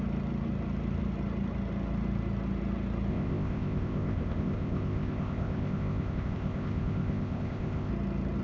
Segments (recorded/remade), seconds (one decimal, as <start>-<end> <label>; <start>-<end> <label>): 0.0-3.1 recorded; 3.1-7.9 remade; 7.9-8.4 recorded